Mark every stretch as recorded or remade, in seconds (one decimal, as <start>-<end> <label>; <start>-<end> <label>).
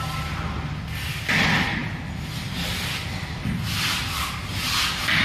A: 0.0-5.2 recorded